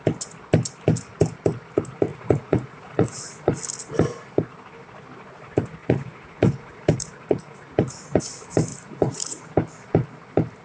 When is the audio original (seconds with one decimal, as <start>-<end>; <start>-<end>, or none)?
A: 0.0-2.1; 3.5-5.8; 8.2-8.7; 9.4-10.6